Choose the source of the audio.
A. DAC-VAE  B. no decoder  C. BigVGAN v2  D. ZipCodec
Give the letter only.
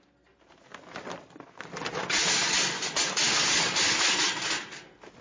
B